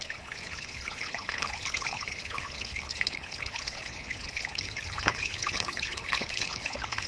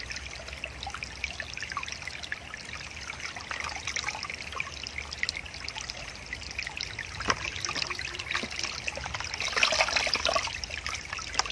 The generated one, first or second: first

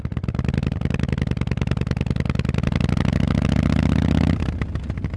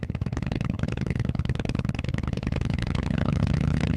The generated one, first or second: second